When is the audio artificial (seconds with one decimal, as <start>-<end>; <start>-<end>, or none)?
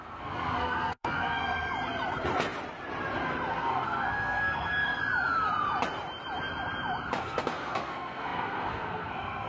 0.0-1.7; 3.5-5.0; 7.2-9.5